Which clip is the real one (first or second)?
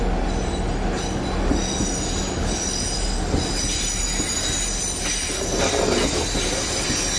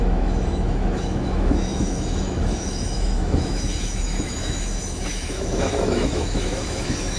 first